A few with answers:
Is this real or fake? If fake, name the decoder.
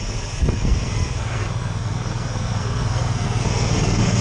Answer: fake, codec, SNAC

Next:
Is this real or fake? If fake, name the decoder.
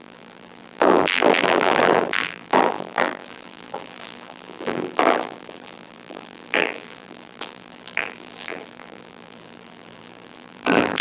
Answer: fake, vocoder, BigVGAN v2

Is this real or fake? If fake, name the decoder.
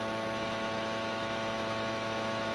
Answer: fake, autoencoder, DAC-VAE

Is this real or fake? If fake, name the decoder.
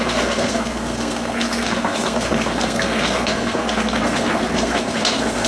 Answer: fake, codec, SNAC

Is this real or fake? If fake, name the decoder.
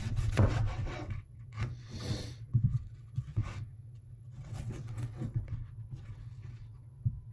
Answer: fake, vocoder, WaveNeXt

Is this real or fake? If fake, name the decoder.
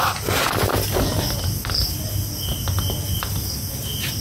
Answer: real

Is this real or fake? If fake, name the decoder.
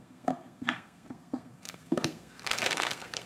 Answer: fake, codec, SNAC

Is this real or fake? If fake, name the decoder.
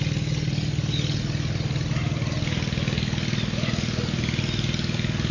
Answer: real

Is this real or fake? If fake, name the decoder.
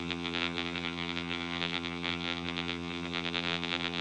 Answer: fake, vocoder, BigVGAN v2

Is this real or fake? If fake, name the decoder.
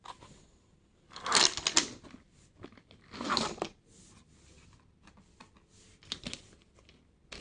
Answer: real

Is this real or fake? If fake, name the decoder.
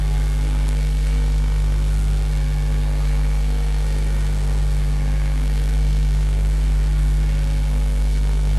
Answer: fake, codec, SNAC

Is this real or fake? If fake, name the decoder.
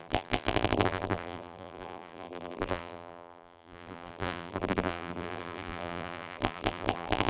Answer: fake, vocoder, BigVGAN v2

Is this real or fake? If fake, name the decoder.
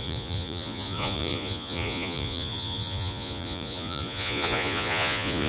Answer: fake, vocoder, Vocos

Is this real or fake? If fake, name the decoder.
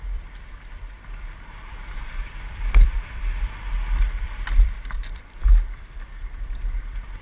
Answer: fake, vocoder, BigVGAN v2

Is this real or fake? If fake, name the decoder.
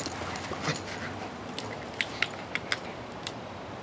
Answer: real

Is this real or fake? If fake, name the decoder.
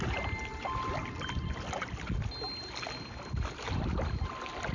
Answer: real